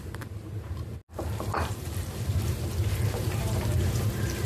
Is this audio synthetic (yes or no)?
yes